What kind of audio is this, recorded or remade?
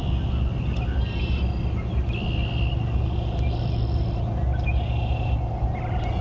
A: recorded